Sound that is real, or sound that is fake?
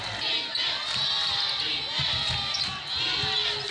real